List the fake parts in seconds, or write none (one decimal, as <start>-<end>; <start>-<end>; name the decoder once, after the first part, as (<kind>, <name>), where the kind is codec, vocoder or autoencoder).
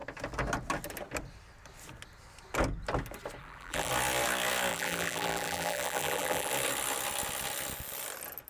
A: 3.4-3.9 (vocoder, BigVGAN v2); 4.7-6.5